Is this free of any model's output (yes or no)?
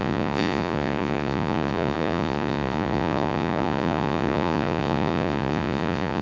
no